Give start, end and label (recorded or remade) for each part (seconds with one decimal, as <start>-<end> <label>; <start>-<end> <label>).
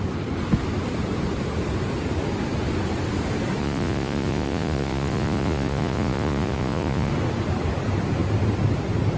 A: 0.0-3.6 recorded; 3.6-7.1 remade; 7.1-9.2 recorded